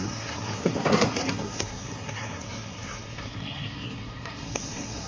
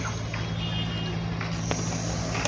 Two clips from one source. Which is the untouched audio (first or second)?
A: second